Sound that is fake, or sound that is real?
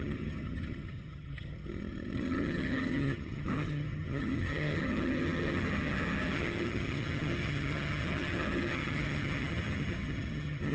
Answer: fake